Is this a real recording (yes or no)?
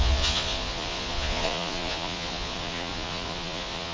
no